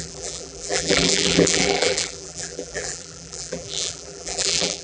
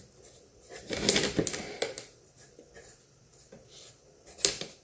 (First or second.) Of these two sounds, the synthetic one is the first